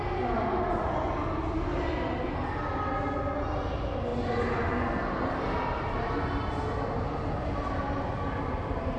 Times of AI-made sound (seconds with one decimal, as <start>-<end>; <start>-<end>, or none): none